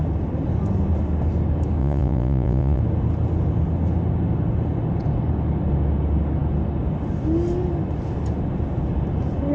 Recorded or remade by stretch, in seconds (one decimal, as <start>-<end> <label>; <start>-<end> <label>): 0.0-1.8 recorded; 1.8-2.8 remade; 2.8-9.5 recorded